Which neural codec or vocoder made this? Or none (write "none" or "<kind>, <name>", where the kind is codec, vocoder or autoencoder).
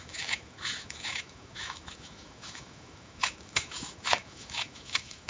autoencoder, DAC-VAE